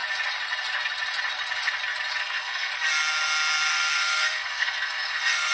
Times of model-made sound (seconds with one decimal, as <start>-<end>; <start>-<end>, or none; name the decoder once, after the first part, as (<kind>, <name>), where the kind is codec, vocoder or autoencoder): 2.2-2.7 (codec, SNAC); 3.7-5.5